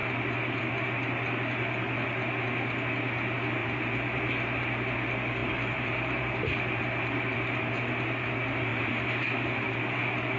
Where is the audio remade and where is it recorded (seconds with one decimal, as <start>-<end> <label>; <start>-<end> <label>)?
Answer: 0.0-3.6 recorded; 3.6-4.3 remade; 4.3-5.4 recorded; 5.4-7.7 remade; 7.7-8.7 recorded; 8.7-10.0 remade; 10.0-10.4 recorded